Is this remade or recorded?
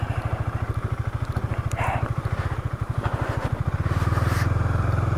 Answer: remade